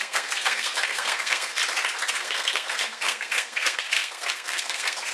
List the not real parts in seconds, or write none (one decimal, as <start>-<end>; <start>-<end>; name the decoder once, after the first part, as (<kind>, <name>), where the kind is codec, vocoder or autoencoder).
0.0-1.6 (codec, SNAC); 2.1-5.1